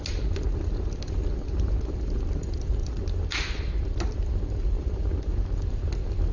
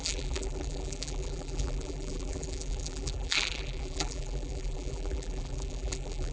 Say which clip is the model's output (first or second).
second